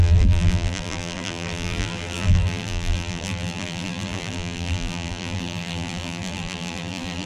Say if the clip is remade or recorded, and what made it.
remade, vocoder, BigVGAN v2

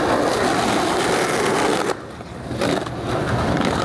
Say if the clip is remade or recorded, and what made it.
recorded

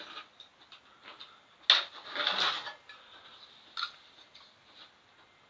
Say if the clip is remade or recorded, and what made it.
recorded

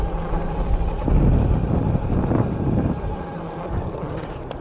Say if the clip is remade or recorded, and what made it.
recorded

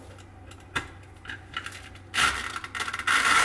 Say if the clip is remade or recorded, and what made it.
recorded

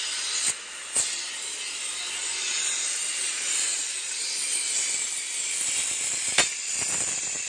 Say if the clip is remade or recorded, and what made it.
recorded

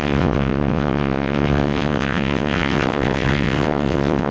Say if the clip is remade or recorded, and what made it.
remade, vocoder, WaveNeXt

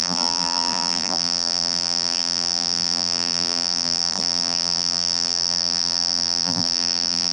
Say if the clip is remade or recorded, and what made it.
remade, vocoder, BigVGAN v2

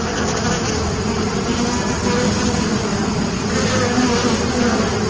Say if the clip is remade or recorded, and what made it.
recorded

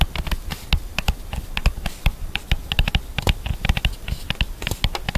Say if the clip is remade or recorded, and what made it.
recorded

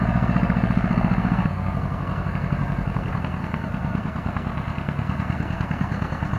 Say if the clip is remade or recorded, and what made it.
remade, codec, SNAC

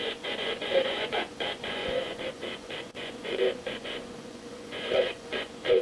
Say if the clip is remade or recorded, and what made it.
remade, vocoder, Vocos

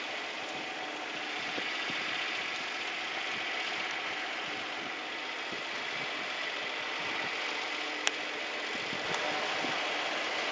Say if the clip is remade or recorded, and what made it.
recorded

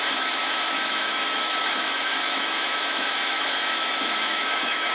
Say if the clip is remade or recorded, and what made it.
remade, autoencoder, DAC-VAE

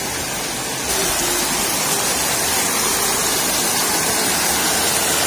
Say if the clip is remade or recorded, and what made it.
recorded